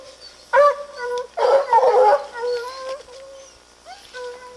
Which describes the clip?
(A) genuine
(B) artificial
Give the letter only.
A